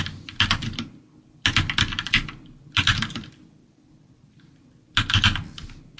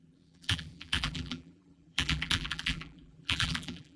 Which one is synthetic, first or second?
second